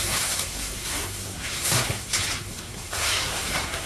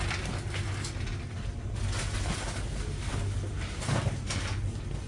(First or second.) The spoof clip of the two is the first